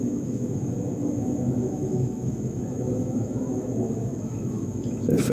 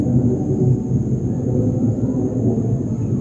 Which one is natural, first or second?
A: second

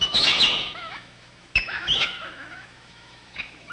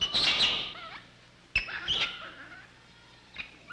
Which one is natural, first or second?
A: second